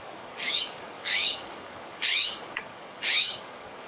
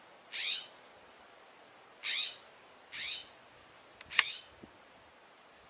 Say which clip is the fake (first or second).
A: first